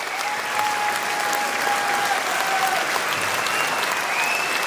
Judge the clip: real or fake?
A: real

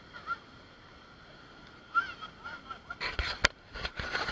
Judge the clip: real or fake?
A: fake